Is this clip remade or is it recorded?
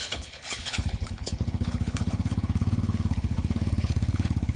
remade